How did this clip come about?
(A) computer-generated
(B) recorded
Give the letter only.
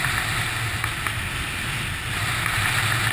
B